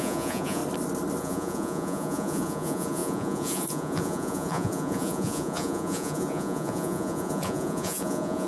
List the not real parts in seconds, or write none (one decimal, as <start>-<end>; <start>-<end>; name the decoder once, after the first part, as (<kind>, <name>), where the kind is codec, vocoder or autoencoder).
0.0-0.6 (vocoder, Vocos); 1.2-8.5